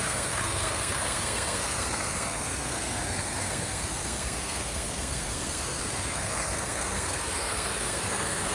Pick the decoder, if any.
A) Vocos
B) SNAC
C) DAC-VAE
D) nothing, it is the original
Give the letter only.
B